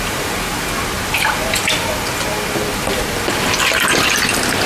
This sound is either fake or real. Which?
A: real